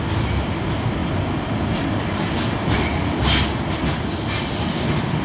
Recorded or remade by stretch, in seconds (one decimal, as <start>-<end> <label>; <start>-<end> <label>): 0.0-5.2 recorded